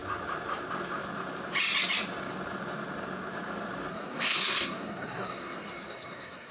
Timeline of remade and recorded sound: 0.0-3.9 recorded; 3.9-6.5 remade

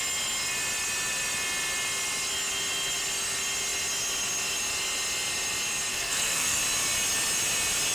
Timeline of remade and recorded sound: 0.0-5.9 recorded; 5.9-6.6 remade; 6.6-7.9 recorded